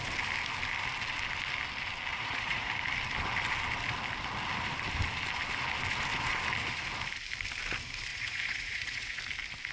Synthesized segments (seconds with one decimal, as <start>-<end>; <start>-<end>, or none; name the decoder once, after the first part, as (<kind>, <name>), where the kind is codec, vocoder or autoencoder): 2.1-2.7 (vocoder, Vocos); 8.1-9.2